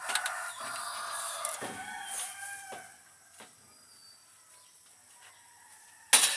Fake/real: real